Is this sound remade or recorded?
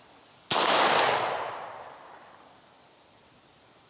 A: recorded